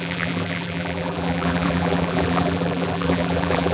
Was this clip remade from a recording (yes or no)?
yes